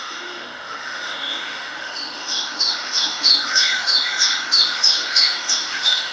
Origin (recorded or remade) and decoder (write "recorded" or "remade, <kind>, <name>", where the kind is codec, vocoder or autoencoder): remade, autoencoder, DAC-VAE